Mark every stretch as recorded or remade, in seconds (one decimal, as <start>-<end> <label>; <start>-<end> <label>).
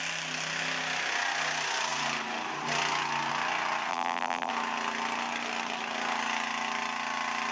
0.0-3.9 recorded; 3.9-4.5 remade; 4.5-7.5 recorded